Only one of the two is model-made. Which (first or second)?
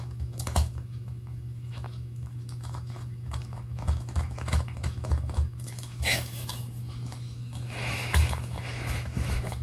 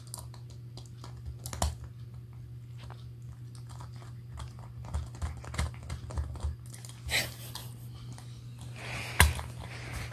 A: first